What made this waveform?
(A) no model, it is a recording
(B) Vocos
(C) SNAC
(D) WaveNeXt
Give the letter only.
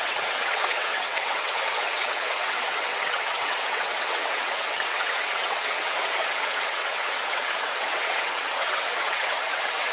D